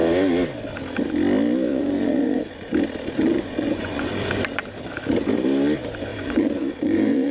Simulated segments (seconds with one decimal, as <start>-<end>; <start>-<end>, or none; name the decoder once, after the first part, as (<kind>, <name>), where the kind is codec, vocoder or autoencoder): 1.7-2.7 (vocoder, Vocos); 3.2-4.3; 6.1-7.3